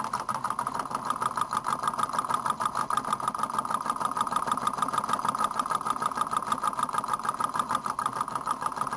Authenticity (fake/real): real